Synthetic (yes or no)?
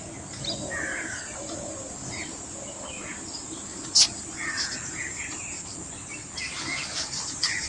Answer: no